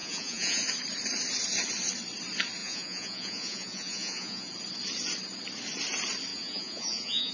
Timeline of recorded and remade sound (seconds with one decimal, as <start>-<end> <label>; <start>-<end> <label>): 0.0-0.6 remade; 0.6-2.6 recorded; 2.6-4.5 remade; 4.5-6.3 recorded; 6.3-7.3 remade